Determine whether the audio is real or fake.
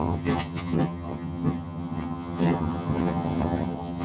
fake